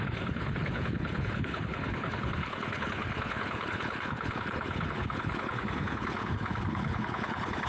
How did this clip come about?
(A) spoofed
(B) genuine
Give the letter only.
A